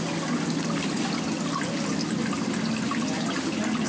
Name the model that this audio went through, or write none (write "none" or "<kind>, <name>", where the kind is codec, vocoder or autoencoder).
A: none